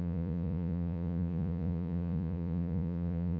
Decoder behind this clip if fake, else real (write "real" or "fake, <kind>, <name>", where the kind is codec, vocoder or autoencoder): fake, vocoder, Vocos